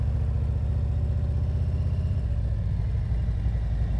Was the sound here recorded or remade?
recorded